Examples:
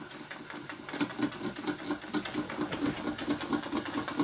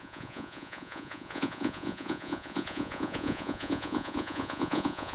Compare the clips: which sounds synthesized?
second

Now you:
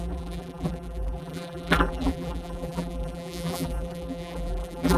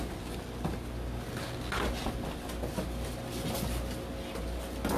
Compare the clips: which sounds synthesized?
first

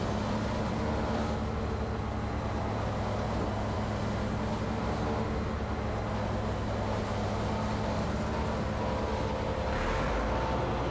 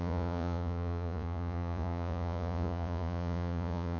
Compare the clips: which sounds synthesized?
second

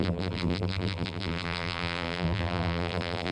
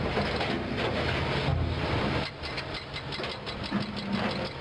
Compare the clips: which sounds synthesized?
first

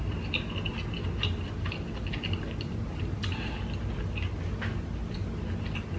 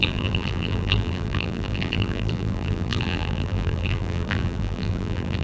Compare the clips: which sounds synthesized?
second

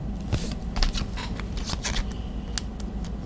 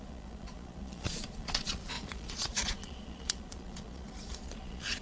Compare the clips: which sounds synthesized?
second